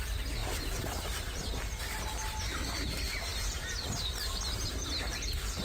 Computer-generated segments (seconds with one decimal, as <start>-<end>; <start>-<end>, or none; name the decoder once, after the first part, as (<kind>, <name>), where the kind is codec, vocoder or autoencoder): none